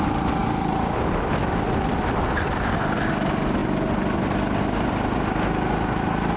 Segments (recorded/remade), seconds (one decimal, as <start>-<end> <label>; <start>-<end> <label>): 0.0-6.4 recorded